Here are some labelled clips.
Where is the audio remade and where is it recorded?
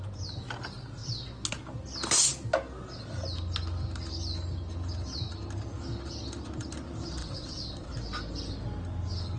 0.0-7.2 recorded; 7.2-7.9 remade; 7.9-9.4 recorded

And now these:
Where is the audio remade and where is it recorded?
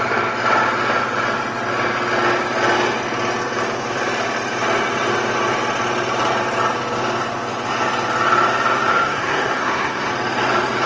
0.0-8.9 recorded; 8.9-10.1 remade; 10.1-10.9 recorded